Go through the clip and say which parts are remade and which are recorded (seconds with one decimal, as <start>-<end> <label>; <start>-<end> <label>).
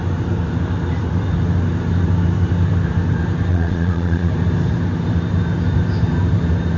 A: 0.0-3.5 recorded; 3.5-4.3 remade; 4.3-6.8 recorded